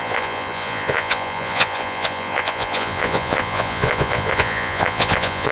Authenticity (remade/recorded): remade